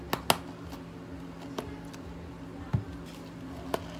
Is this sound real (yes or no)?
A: yes